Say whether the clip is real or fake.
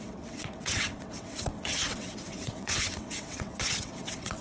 fake